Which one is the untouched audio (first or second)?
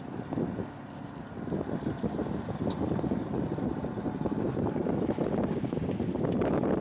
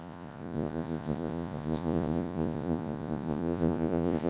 first